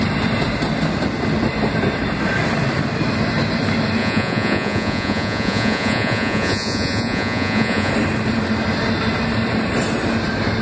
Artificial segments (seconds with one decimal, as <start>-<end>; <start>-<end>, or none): 4.0-7.9